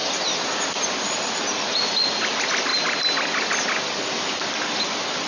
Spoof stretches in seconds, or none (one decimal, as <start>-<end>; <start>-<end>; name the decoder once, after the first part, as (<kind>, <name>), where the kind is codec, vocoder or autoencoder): 0.0-1.4 (vocoder, BigVGAN v2)